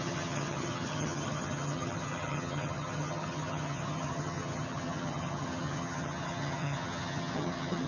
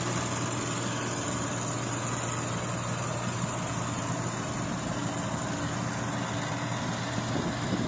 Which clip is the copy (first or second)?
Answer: first